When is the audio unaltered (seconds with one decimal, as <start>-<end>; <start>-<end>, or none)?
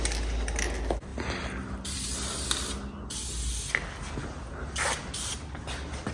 0.0-6.1